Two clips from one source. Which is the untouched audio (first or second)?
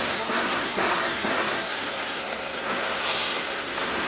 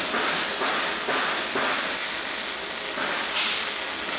second